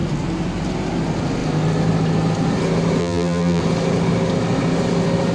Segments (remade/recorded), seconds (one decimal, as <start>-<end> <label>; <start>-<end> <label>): 0.0-3.0 recorded; 3.0-3.6 remade; 3.6-5.3 recorded